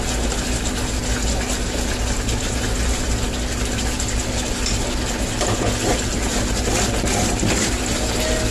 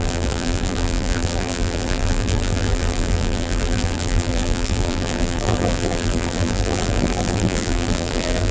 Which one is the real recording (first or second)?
first